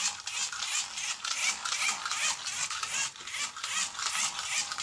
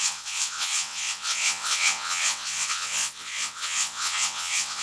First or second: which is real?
first